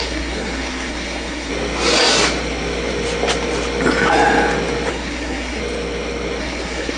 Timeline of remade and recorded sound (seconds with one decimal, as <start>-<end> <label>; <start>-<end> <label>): 0.0-1.5 remade; 1.5-4.9 recorded; 4.9-5.6 remade; 5.6-6.4 recorded; 6.4-7.0 remade